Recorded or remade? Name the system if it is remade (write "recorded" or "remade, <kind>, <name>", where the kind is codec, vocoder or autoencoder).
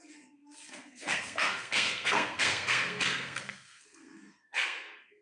remade, codec, SNAC